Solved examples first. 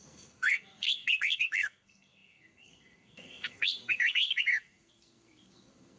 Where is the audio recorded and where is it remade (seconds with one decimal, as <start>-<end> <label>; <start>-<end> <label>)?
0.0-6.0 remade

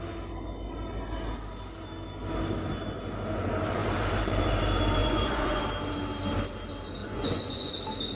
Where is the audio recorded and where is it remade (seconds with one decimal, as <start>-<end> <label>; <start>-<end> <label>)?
0.0-5.0 recorded; 5.0-5.6 remade; 5.6-7.0 recorded; 7.0-7.7 remade; 7.7-8.2 recorded

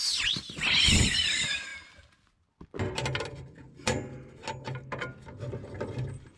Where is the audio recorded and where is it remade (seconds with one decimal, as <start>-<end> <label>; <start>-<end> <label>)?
0.0-6.4 recorded

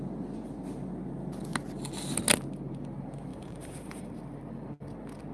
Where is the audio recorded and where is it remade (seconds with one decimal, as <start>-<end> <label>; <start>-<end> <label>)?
0.0-3.3 recorded; 3.3-4.2 remade; 4.2-5.3 recorded

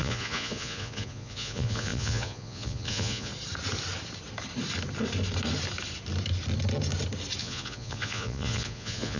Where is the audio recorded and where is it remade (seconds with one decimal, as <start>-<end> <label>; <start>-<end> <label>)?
0.0-3.3 remade; 3.3-7.4 recorded; 7.4-9.2 remade

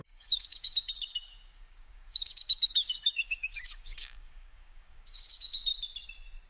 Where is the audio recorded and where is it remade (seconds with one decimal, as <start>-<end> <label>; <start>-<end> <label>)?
0.0-5.7 remade; 5.7-6.5 recorded

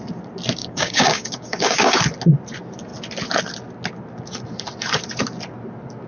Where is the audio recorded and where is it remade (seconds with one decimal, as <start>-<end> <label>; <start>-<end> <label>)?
0.0-0.6 recorded; 0.6-2.0 remade; 2.0-6.1 recorded

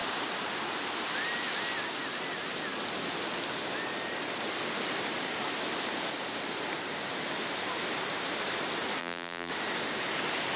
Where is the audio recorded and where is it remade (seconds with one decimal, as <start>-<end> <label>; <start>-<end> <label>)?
0.0-9.0 recorded; 9.0-9.5 remade; 9.5-10.6 recorded